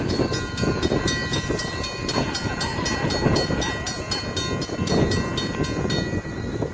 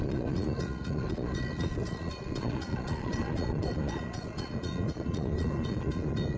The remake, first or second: second